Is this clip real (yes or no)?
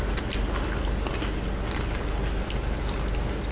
yes